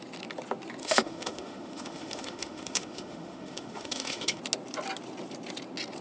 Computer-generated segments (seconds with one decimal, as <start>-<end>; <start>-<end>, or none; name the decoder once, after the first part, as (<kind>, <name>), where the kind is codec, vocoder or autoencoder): 0.8-4.4 (autoencoder, DAC-VAE)